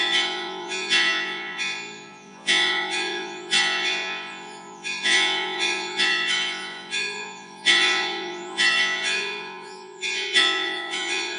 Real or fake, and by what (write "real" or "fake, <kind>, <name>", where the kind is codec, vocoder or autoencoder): fake, vocoder, Vocos